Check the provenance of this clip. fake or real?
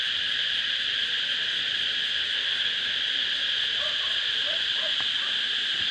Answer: real